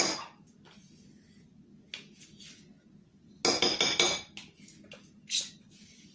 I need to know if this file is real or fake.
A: real